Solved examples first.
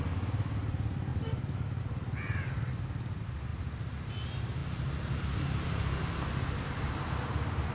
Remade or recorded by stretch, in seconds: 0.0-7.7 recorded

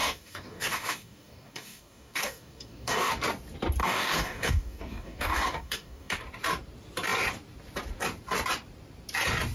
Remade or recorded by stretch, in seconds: 0.0-3.1 remade; 3.1-3.8 recorded; 3.8-6.2 remade; 6.2-9.5 recorded

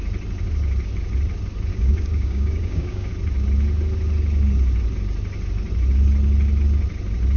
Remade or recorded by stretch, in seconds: 0.0-1.7 recorded; 1.7-3.1 remade; 3.1-7.4 recorded

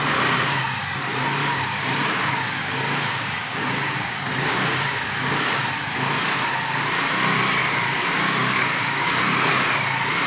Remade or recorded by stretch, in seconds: 0.0-1.4 recorded; 1.4-5.6 remade; 5.6-7.6 recorded; 7.6-9.5 remade; 9.5-10.3 recorded

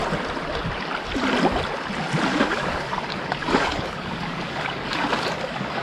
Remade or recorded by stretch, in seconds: 0.0-2.3 recorded; 2.3-5.8 remade

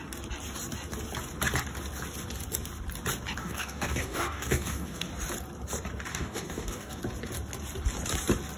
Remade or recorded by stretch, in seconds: 0.0-3.4 recorded; 3.4-5.1 remade; 5.1-6.1 recorded; 6.1-7.0 remade; 7.0-8.6 recorded

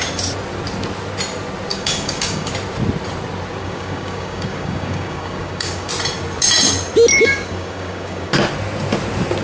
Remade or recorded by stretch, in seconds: 0.0-1.7 recorded; 1.7-2.5 remade; 2.5-3.6 recorded; 3.6-5.9 remade; 5.9-7.1 recorded; 7.1-8.3 remade; 8.3-9.4 recorded

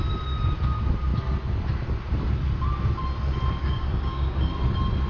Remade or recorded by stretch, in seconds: 0.0-3.6 recorded; 3.6-4.5 remade; 4.5-5.1 recorded